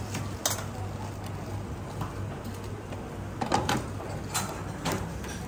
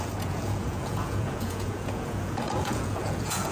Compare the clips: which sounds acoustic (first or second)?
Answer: first